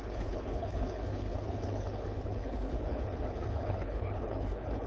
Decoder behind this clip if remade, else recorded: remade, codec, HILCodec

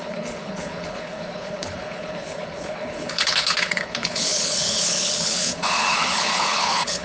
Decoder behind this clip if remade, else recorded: remade, codec, HILCodec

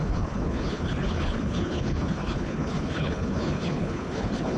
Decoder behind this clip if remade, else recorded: remade, codec, HILCodec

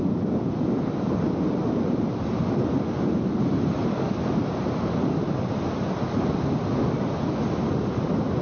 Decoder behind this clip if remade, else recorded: recorded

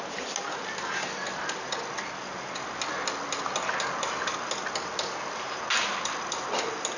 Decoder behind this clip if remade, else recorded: recorded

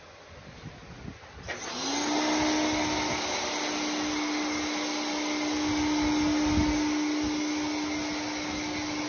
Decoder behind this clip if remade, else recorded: recorded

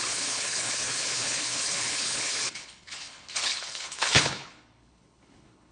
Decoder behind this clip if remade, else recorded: remade, codec, HILCodec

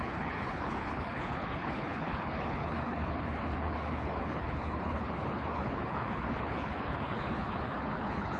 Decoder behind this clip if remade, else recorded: remade, codec, HILCodec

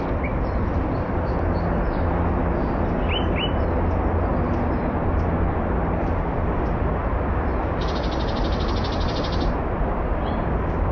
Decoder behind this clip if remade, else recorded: recorded